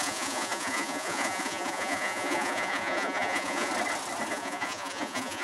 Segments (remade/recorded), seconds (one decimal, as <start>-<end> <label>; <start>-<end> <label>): 0.0-3.7 remade; 3.7-4.3 recorded; 4.3-5.4 remade